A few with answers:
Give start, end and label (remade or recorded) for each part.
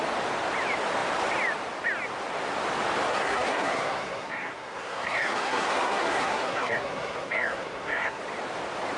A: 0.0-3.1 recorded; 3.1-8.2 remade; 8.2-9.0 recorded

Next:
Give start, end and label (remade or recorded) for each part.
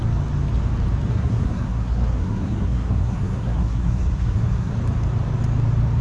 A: 0.0-1.1 recorded; 1.1-4.7 remade; 4.7-6.0 recorded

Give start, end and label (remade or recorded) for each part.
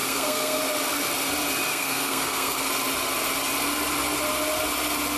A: 0.0-0.6 remade; 0.6-1.7 recorded; 1.7-2.7 remade; 2.7-5.2 recorded